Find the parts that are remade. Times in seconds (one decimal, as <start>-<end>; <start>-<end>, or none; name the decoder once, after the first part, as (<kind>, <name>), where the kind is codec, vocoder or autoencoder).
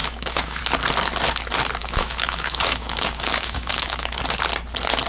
0.0-0.6 (autoencoder, DAC-VAE); 1.8-4.2